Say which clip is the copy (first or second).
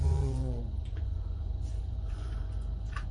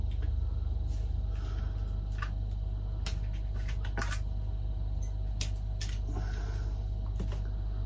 first